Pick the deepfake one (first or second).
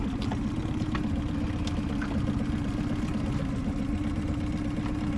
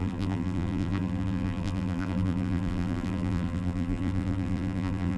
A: second